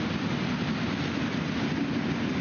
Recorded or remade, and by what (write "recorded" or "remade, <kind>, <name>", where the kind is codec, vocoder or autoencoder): recorded